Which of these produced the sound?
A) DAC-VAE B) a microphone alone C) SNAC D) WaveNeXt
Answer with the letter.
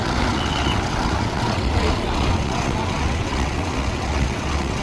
D